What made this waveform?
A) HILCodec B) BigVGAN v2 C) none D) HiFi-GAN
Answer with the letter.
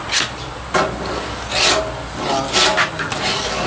C